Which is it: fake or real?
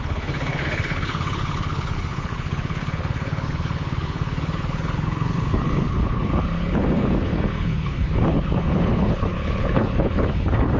fake